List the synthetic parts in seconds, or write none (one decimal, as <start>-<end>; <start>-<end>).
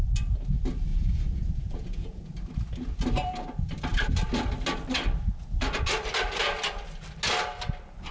0.9-2.3